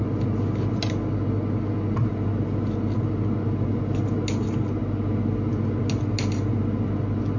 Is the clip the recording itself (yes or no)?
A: yes